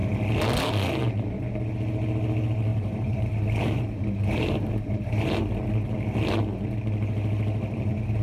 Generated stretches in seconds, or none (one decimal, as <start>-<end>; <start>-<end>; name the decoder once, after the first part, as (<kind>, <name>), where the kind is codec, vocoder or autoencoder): 2.7-5.4 (vocoder, BigVGAN v2)